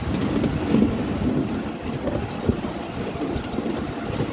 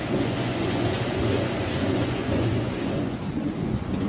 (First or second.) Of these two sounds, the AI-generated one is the second